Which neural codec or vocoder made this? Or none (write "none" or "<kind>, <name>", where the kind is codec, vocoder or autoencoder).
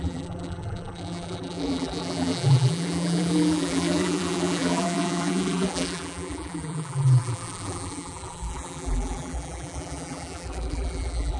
vocoder, BigVGAN v2